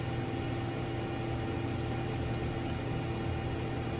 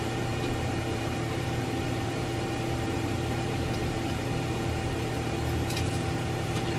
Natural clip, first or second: first